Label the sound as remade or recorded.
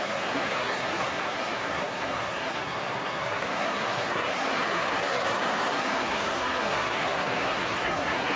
remade